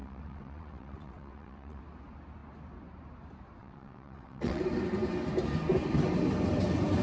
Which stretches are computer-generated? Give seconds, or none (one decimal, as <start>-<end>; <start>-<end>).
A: 0.0-1.8; 3.6-4.6